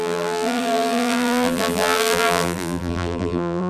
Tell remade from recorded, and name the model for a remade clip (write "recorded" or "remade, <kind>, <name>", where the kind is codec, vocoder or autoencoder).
remade, vocoder, BigVGAN v2